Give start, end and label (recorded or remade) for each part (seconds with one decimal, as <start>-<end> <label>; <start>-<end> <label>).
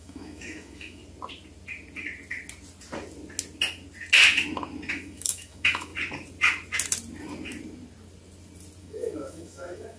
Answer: 0.0-1.0 remade; 1.0-4.9 recorded; 4.9-5.9 remade; 5.9-8.8 recorded; 8.8-10.0 remade